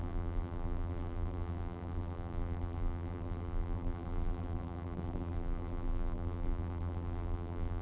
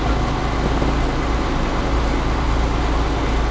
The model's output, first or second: first